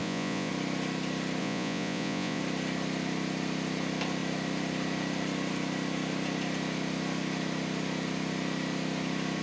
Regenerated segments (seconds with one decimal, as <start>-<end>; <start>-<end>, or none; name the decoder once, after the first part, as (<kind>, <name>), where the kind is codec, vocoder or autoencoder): 0.0-0.5 (vocoder, Vocos); 1.4-2.4